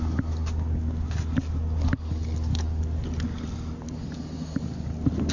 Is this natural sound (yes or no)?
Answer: yes